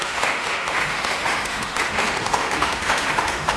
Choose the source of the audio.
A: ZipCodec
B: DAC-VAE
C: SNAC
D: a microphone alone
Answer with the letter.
B